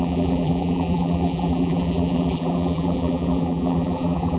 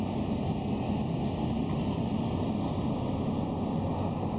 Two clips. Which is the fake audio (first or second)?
first